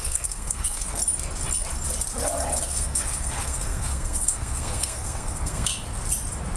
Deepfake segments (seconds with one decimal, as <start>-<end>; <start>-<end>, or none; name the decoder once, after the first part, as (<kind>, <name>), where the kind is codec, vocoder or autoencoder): 0.0-1.0 (codec, SNAC); 2.6-5.7